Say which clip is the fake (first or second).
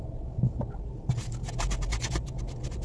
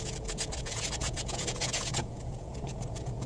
second